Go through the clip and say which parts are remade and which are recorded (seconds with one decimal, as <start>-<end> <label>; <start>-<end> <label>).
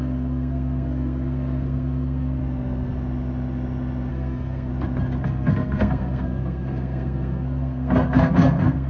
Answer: 0.0-2.4 remade; 2.4-4.1 recorded; 4.1-4.7 remade; 4.7-5.2 recorded; 5.2-8.9 remade